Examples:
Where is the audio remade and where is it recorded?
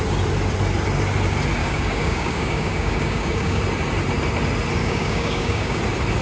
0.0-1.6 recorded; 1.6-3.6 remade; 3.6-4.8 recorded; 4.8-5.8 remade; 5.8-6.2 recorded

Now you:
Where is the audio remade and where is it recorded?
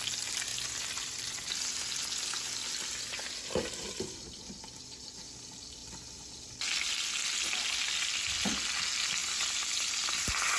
0.0-0.5 recorded; 0.5-1.6 remade; 1.6-9.2 recorded; 9.2-9.9 remade; 9.9-10.6 recorded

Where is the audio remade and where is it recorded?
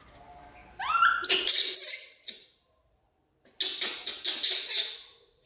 0.0-0.6 recorded; 0.6-3.5 remade; 3.5-5.5 recorded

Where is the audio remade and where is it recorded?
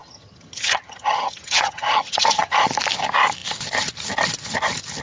0.0-2.5 remade; 2.5-5.0 recorded